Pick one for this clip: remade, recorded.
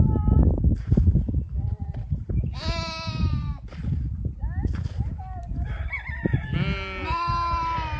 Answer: recorded